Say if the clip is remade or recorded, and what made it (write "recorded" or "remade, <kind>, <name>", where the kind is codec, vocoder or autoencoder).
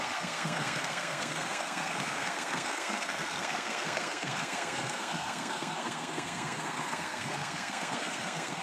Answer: remade, codec, SNAC